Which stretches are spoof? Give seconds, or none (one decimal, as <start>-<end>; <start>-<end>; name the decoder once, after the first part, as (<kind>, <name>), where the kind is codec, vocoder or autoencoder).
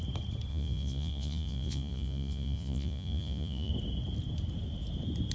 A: 0.5-3.7 (vocoder, Vocos)